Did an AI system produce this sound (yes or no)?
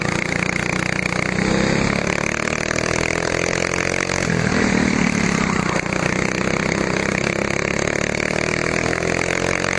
yes